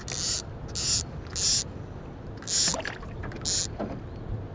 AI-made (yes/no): no